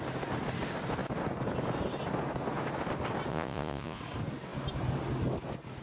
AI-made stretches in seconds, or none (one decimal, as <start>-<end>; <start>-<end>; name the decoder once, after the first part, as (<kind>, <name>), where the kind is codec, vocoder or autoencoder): 3.3-4.0 (vocoder, Vocos)